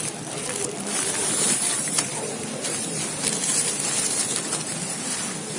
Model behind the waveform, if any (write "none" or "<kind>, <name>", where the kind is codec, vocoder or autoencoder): vocoder, BigVGAN v2